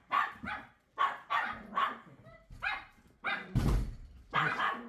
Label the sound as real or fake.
fake